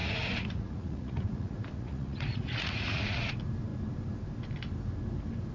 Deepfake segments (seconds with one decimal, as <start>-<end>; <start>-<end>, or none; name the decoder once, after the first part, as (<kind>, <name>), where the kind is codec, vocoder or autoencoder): 0.0-3.3 (vocoder, Vocos)